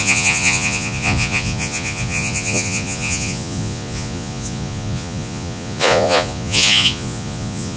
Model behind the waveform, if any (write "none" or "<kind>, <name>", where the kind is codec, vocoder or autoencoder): vocoder, Vocos